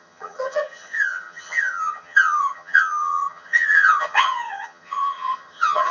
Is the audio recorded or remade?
remade